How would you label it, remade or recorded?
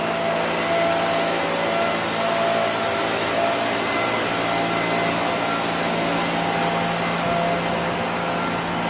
recorded